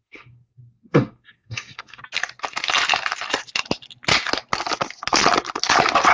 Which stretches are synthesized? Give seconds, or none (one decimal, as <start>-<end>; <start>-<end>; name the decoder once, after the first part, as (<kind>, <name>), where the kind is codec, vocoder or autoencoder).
0.0-2.0 (codec, SNAC)